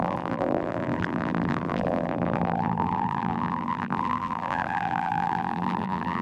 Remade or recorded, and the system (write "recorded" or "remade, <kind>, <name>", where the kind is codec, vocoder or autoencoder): remade, vocoder, BigVGAN v2